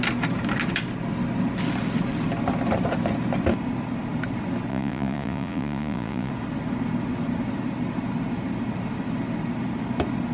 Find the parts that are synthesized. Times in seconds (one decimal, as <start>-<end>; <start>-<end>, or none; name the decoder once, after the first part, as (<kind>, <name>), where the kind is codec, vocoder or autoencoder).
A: 4.7-6.3 (vocoder, Vocos)